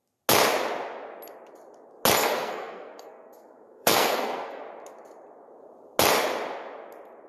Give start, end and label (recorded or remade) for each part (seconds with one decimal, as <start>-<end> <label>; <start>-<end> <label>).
0.0-2.2 recorded; 2.2-4.6 remade; 4.6-7.3 recorded